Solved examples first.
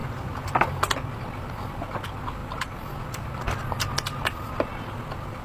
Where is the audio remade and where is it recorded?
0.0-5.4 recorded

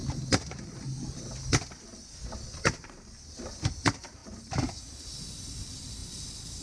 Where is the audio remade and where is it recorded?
0.0-2.9 recorded; 2.9-4.2 remade; 4.2-4.7 recorded; 4.7-6.0 remade; 6.0-6.6 recorded

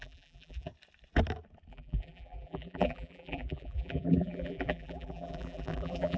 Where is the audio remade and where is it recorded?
0.0-0.7 remade; 0.7-1.7 recorded; 1.7-6.2 remade

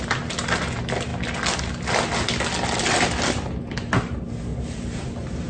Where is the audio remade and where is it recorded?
0.0-4.5 recorded; 4.5-5.0 remade; 5.0-5.5 recorded

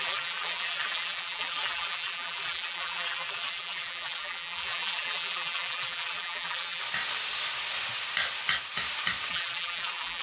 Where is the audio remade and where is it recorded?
0.0-6.8 remade; 6.8-9.3 recorded; 9.3-10.2 remade

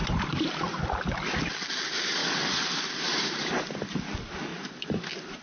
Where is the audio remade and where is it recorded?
0.0-0.6 remade; 0.6-2.2 recorded; 2.2-4.0 remade; 4.0-4.5 recorded; 4.5-5.4 remade

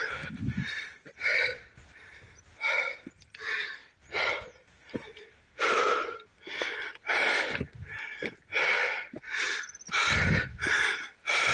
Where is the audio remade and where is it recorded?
0.0-2.1 remade; 2.1-8.7 recorded; 8.7-9.3 remade; 9.3-11.5 recorded